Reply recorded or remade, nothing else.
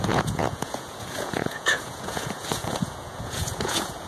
remade